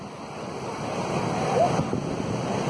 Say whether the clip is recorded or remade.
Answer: recorded